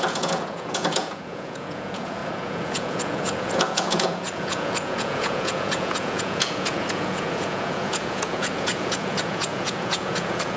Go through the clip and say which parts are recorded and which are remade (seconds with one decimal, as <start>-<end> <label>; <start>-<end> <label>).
0.0-10.6 remade